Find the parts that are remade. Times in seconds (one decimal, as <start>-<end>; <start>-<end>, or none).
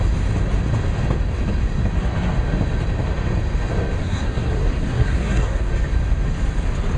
4.0-5.7